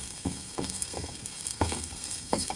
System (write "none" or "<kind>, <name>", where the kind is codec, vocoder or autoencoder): codec, SNAC